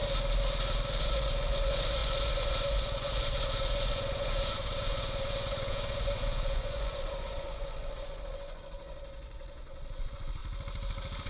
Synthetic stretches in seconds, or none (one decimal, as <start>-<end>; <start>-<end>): 1.0-10.4